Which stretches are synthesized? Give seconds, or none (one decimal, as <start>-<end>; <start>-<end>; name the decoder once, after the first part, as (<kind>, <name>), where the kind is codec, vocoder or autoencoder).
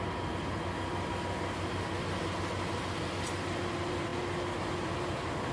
none